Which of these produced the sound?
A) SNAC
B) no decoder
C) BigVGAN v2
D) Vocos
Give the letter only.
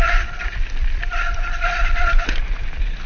C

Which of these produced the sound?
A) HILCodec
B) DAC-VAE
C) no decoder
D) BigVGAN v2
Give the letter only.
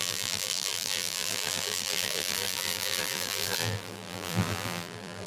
D